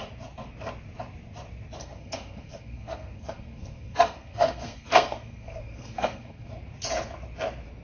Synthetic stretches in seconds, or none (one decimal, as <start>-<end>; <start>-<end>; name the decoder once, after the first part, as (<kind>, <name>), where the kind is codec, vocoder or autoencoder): 1.8-6.5 (codec, SNAC)

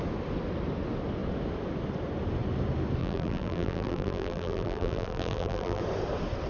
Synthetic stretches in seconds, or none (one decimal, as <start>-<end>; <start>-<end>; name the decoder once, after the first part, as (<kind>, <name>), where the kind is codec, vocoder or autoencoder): 3.0-5.8 (vocoder, BigVGAN v2)